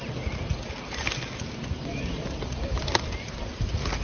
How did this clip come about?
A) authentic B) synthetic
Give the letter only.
A